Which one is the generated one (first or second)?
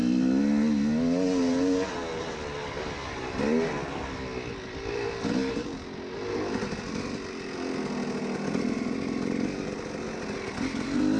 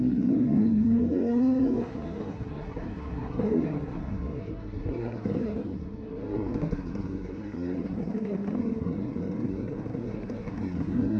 second